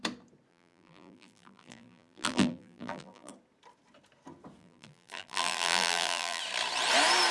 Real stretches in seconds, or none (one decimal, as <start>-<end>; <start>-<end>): 0.0-0.5; 3.3-4.6; 6.4-7.3